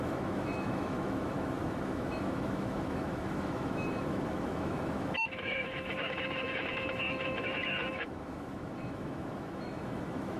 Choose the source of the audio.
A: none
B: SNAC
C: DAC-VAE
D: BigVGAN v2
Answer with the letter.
C